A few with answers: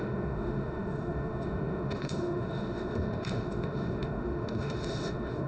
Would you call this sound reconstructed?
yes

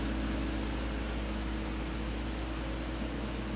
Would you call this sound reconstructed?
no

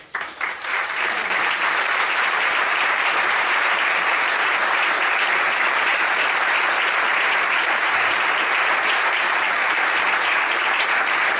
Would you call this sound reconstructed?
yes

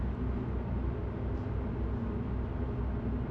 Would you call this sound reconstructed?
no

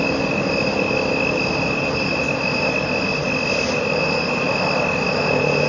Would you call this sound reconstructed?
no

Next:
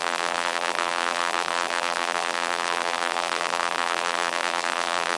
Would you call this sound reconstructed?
yes